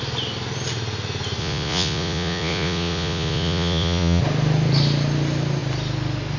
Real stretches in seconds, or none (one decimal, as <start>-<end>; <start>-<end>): 0.0-1.4; 4.2-6.4